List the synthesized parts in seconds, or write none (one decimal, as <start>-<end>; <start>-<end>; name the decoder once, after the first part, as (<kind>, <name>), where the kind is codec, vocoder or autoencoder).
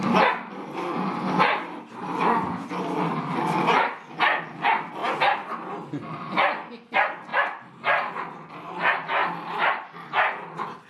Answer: none